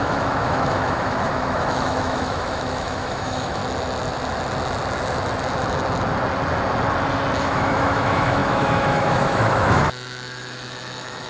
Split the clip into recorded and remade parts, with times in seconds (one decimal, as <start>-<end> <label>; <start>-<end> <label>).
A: 0.0-3.6 remade; 3.6-7.4 recorded; 7.4-11.3 remade